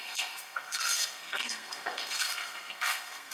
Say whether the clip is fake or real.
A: fake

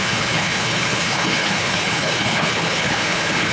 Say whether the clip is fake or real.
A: fake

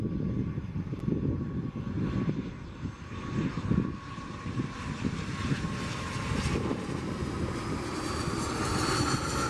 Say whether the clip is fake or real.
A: real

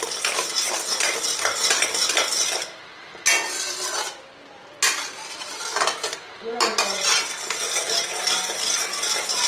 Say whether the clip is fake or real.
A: real